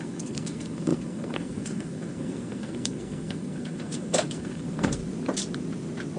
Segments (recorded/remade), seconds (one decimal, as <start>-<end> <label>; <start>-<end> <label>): 0.0-5.0 remade; 5.0-6.2 recorded